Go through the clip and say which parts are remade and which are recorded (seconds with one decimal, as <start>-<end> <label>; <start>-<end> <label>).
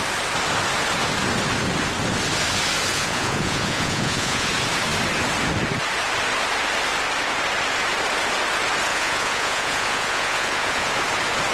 0.0-2.9 recorded; 2.9-4.5 remade; 4.5-8.9 recorded; 8.9-10.9 remade; 10.9-11.5 recorded